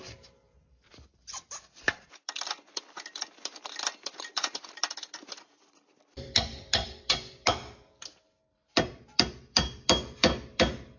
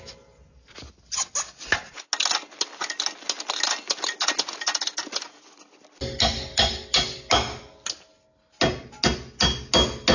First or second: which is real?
second